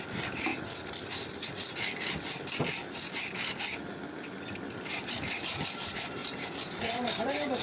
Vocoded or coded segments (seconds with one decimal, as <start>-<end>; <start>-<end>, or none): 0.0-0.5; 5.1-7.6